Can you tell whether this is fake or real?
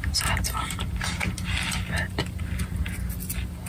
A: real